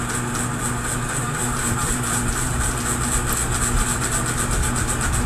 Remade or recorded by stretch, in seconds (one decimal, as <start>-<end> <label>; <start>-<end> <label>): 0.0-1.2 recorded; 1.2-2.5 remade; 2.5-5.3 recorded